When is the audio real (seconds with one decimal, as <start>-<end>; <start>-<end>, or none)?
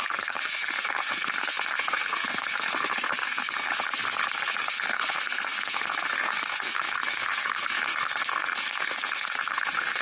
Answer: 3.7-4.6